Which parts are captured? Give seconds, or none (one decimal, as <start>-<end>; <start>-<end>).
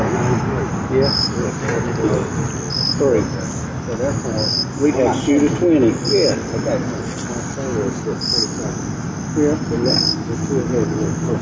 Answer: 0.0-11.4